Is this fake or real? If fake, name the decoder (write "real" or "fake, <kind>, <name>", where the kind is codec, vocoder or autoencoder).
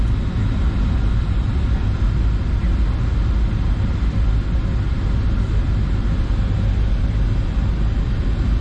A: real